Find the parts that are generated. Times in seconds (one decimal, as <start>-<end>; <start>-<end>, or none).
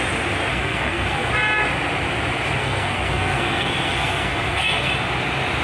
0.5-1.3; 2.6-4.9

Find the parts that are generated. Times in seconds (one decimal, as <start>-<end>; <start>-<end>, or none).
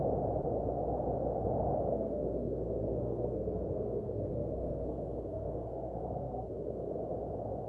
1.9-6.5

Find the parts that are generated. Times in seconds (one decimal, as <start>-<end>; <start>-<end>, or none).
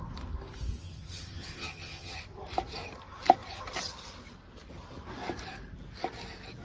0.8-2.2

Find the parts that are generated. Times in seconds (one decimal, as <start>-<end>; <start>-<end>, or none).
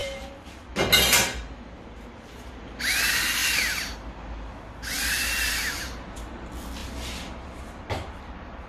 0.0-0.7; 6.8-8.7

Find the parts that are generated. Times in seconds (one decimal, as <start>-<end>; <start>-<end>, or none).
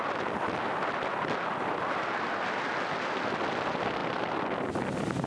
none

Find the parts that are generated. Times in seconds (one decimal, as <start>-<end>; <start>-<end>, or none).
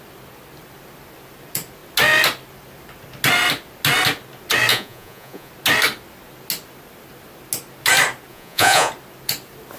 4.7-5.5; 8.3-8.9